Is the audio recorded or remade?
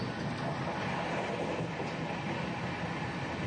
recorded